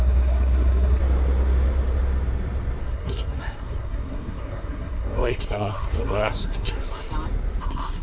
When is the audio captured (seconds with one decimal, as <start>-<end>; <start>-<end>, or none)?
1.0-2.8; 7.1-7.6